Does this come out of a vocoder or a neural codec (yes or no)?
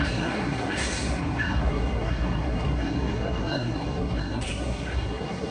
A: yes